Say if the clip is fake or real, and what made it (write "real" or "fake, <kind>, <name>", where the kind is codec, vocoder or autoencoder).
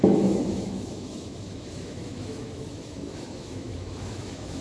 fake, autoencoder, DAC-VAE